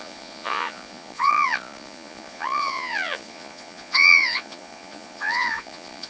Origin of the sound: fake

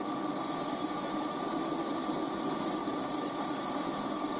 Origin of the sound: real